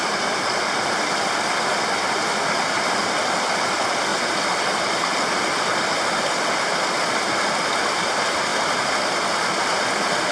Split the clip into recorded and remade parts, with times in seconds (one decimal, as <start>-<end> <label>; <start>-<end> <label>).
0.0-10.3 recorded